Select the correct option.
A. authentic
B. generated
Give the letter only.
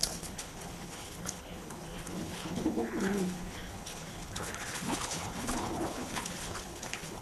B